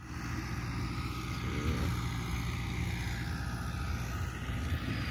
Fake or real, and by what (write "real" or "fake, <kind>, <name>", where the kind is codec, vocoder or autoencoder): real